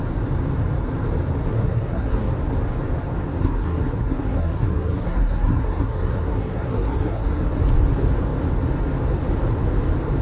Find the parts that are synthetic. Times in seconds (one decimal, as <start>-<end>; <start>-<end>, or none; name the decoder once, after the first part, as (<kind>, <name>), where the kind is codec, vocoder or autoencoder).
1.5-2.3 (codec, SNAC); 3.4-7.5